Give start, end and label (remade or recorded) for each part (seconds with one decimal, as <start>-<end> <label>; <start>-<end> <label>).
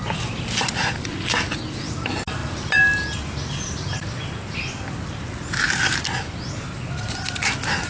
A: 0.0-7.9 recorded